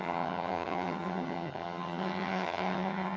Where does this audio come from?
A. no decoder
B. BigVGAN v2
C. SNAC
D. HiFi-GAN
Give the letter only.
D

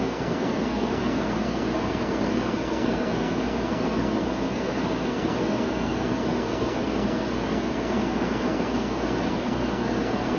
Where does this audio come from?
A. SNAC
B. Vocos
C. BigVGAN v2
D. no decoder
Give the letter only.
A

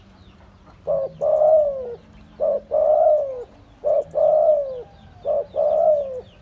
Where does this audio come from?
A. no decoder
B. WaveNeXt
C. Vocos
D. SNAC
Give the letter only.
A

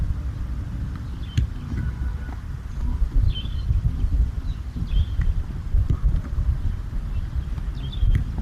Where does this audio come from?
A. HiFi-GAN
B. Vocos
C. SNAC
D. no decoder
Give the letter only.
D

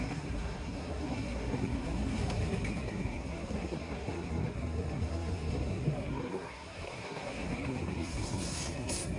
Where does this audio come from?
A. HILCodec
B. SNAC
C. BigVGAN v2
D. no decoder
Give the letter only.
B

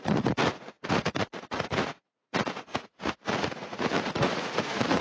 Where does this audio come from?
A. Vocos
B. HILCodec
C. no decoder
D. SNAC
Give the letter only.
A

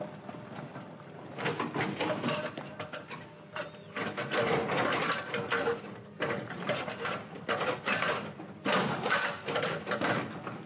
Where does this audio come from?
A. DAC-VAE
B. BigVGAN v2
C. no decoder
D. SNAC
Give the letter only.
C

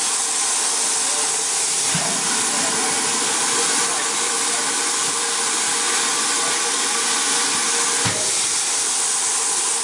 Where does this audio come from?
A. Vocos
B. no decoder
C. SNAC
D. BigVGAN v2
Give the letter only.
B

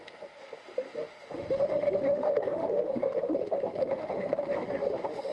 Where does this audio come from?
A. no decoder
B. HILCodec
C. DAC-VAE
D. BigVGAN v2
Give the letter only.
C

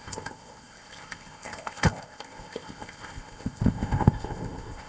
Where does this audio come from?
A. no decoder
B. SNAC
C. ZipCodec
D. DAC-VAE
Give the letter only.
C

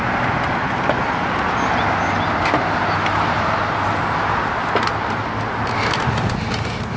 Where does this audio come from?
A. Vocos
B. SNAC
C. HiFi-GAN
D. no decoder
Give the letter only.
D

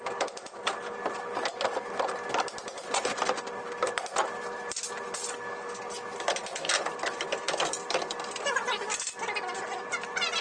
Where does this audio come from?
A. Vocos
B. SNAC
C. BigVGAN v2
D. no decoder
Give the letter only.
D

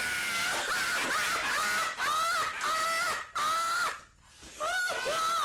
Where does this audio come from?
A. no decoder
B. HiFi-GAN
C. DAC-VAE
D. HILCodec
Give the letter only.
A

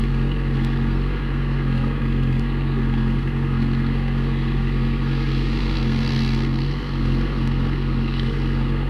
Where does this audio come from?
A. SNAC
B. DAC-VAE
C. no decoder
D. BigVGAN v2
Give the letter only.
A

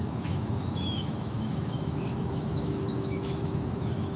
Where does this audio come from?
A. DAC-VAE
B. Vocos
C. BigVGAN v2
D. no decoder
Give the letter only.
A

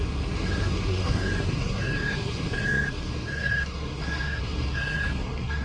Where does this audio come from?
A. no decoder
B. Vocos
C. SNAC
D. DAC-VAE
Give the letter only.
C